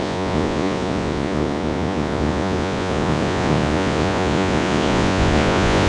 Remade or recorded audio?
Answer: remade